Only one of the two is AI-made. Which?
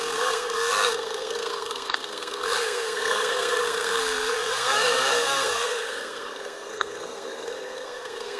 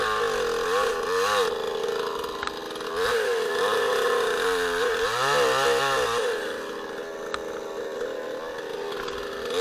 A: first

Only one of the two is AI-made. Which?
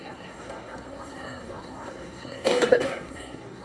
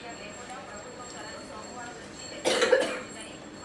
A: first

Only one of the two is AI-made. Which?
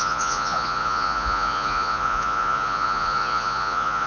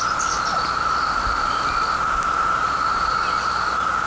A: first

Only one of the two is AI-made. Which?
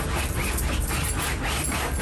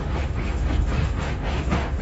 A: second